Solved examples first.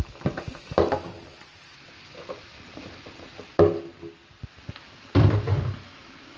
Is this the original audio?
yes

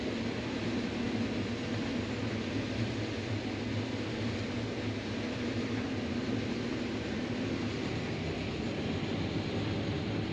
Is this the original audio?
yes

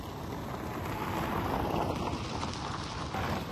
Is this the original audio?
yes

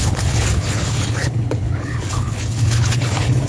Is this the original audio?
no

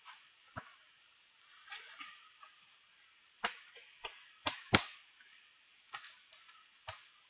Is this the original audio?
yes